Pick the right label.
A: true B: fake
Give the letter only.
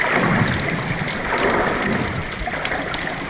A